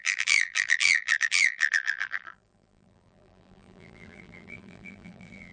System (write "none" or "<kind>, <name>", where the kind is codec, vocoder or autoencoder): vocoder, BigVGAN v2